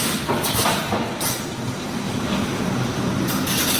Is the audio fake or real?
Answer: real